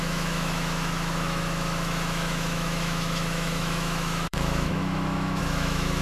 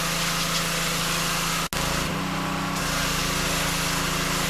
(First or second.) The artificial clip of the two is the first